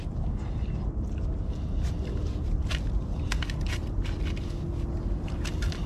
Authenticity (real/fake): real